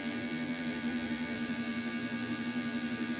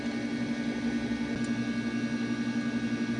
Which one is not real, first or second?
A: first